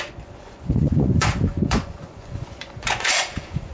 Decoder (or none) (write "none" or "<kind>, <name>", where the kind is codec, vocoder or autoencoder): vocoder, Vocos